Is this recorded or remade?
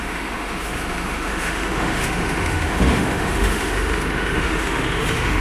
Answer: remade